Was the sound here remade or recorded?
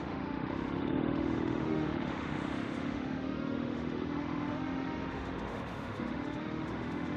remade